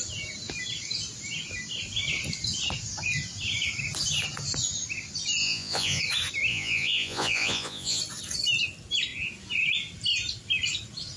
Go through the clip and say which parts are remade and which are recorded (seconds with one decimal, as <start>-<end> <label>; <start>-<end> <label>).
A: 0.0-5.4 recorded; 5.4-6.0 remade; 6.0-6.5 recorded; 6.5-8.0 remade; 8.0-11.2 recorded